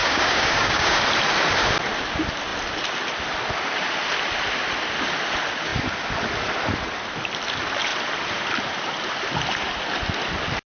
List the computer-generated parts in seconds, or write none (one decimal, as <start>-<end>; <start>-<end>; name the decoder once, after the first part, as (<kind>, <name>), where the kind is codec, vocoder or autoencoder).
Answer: 0.0-1.0 (codec, DAC)